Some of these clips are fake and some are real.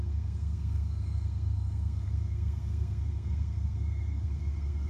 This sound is fake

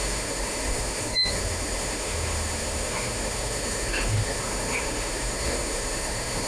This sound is fake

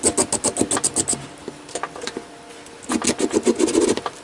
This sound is real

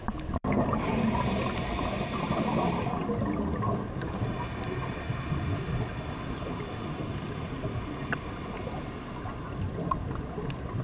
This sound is real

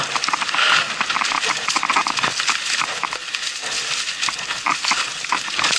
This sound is real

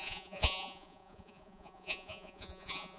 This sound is fake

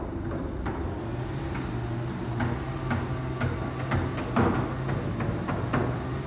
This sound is real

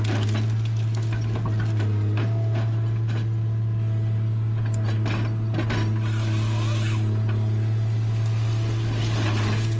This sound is real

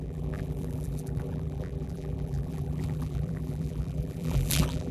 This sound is fake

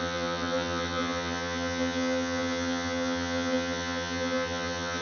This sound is fake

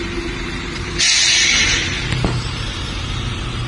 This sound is fake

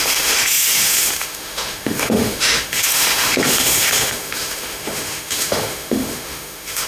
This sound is fake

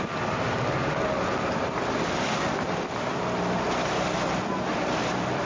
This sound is fake